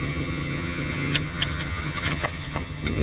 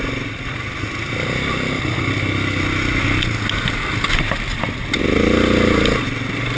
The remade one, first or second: first